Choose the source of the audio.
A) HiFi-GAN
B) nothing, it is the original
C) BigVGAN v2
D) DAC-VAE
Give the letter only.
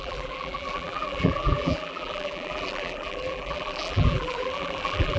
C